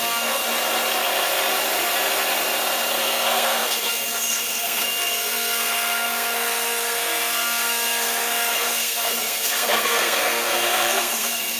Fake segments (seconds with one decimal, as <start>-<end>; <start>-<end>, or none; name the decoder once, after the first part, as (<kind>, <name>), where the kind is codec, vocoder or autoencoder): 0.0-0.4 (codec, SNAC); 3.0-11.6

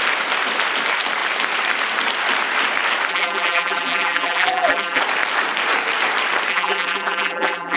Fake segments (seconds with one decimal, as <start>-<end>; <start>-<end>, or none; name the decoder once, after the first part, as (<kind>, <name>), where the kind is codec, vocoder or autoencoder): 3.1-5.0 (vocoder, BigVGAN v2); 6.5-7.8

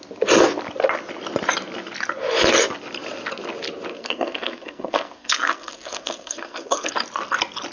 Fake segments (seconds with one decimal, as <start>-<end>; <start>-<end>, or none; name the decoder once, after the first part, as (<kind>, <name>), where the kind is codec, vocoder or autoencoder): 3.9-6.9 (codec, SNAC)

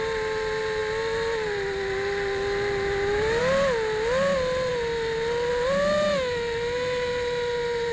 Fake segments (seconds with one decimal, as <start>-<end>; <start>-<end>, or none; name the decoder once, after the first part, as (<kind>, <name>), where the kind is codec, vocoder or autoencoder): none

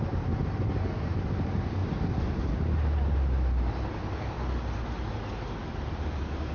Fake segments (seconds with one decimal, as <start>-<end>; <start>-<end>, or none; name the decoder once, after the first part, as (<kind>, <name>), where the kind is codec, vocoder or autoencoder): none

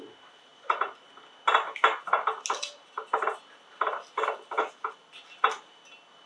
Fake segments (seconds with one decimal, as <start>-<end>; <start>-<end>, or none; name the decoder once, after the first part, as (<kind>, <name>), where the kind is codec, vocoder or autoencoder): none